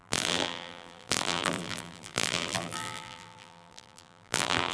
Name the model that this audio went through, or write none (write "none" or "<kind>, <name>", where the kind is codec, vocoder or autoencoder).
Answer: vocoder, BigVGAN v2